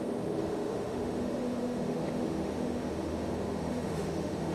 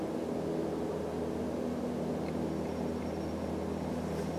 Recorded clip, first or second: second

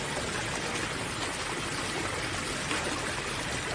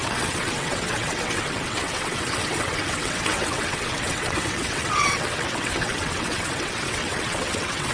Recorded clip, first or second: first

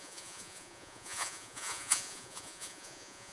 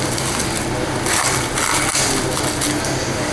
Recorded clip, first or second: second